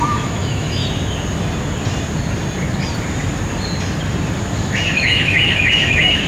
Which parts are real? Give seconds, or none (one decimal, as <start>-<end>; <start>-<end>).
0.8-4.6